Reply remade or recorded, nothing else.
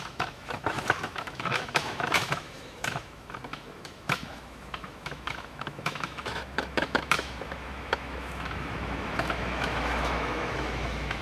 remade